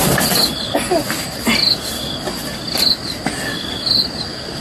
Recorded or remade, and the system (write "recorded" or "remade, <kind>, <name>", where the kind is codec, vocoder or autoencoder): recorded